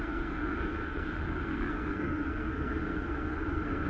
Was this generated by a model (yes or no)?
yes